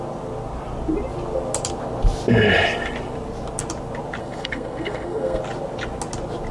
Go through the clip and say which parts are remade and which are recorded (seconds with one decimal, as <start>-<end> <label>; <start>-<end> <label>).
0.0-4.2 recorded; 4.2-5.4 remade; 5.4-6.5 recorded